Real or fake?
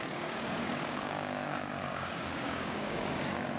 fake